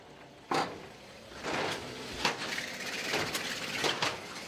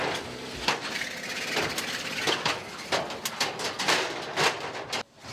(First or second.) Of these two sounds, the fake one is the first